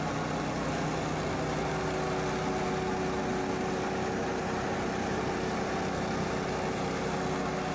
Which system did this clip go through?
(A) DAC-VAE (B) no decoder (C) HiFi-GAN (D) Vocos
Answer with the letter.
B